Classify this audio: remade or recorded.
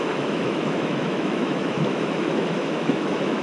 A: remade